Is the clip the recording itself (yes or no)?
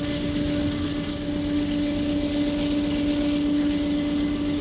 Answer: yes